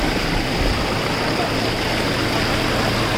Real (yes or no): yes